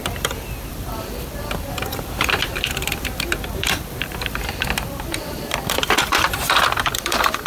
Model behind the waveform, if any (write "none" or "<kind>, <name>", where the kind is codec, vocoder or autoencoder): vocoder, BigVGAN v2